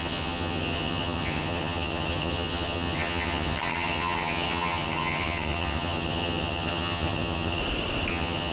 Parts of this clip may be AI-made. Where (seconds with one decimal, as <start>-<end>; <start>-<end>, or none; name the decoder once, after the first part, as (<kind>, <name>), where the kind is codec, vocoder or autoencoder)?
0.0-7.6 (vocoder, HiFi-GAN); 8.1-8.5